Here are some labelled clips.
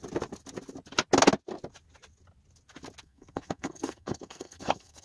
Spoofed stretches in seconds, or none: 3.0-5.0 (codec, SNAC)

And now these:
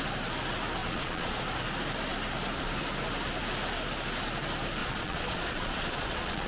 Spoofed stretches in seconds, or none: 0.8-1.4 (vocoder, Vocos); 4.8-6.5

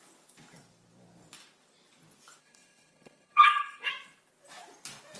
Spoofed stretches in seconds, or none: 2.4-3.9 (codec, HILCodec)

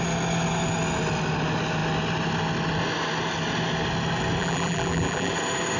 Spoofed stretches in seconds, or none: 4.4-5.3 (vocoder, BigVGAN v2)